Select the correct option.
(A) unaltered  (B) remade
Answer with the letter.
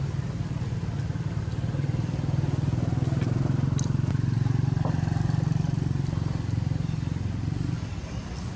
A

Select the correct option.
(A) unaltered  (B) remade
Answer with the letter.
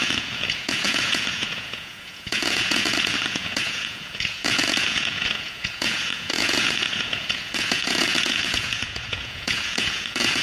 B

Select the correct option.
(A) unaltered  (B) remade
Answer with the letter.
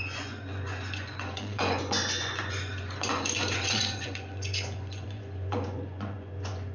B